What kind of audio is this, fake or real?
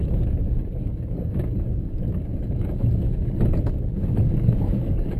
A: fake